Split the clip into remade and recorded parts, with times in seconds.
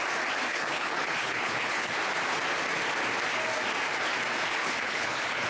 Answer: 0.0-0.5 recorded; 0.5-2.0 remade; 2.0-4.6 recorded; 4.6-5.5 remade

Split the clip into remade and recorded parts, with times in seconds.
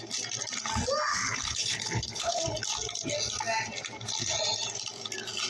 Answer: 0.0-1.1 recorded; 1.1-2.4 remade; 2.4-5.5 recorded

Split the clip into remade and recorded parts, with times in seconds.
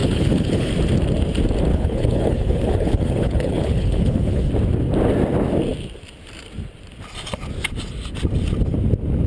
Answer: 0.0-0.7 remade; 0.7-1.7 recorded; 1.7-4.5 remade; 4.5-9.3 recorded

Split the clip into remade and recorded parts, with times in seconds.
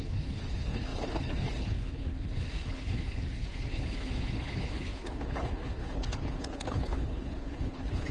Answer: 0.0-8.1 remade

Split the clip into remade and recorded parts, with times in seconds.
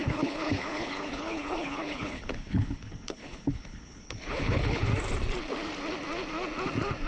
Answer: 0.0-4.9 remade; 4.9-7.1 recorded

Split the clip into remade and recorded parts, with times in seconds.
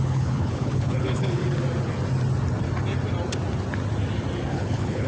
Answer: 0.0-1.4 remade; 1.4-4.5 recorded; 4.5-5.1 remade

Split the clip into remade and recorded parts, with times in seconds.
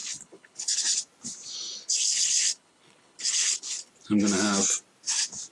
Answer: 0.0-0.8 remade; 0.8-1.8 recorded; 1.8-3.9 remade; 3.9-5.5 recorded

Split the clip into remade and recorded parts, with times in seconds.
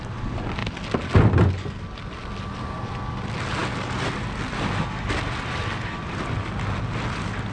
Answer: 0.0-7.5 recorded